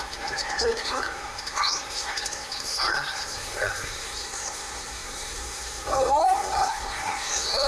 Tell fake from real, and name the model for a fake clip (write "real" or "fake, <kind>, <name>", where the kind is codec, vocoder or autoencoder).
fake, codec, SNAC